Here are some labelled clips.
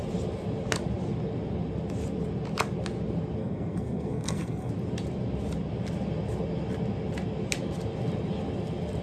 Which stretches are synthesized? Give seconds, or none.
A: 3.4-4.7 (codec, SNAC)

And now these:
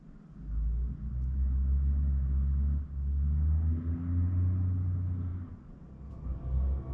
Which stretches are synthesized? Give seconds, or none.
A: none